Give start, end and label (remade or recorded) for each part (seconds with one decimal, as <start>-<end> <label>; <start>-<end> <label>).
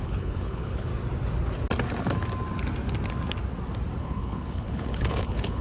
0.0-0.9 remade; 0.9-4.0 recorded; 4.0-5.6 remade